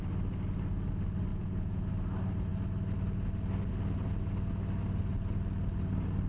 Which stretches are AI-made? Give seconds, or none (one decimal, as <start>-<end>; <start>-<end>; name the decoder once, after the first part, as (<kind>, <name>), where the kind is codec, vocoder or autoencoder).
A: 1.3-1.9 (vocoder, Vocos)